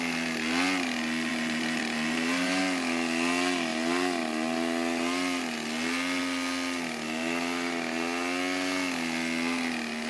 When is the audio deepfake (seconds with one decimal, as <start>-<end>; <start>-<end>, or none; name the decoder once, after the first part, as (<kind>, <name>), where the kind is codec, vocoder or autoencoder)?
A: 1.3-2.6 (vocoder, BigVGAN v2)